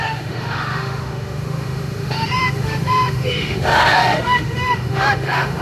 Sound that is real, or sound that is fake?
fake